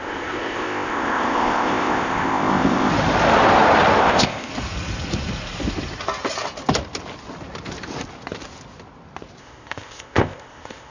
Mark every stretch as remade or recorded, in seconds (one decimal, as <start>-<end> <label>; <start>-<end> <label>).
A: 0.0-2.9 remade; 2.9-4.0 recorded; 4.0-4.5 remade; 4.5-9.4 recorded; 9.4-10.9 remade